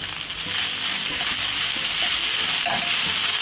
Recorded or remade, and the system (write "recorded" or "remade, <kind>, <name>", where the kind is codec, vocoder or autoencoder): recorded